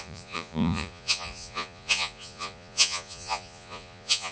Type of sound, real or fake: fake